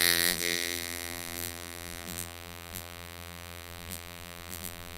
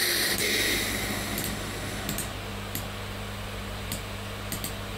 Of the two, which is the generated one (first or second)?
first